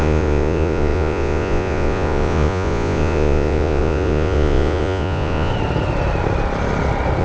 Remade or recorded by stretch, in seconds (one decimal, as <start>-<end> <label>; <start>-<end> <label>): 0.0-5.5 remade; 5.5-7.2 recorded